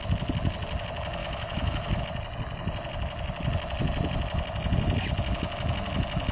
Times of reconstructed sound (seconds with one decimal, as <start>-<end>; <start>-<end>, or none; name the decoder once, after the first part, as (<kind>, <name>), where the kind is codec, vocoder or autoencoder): 1.2-2.0 (autoencoder, DAC-VAE)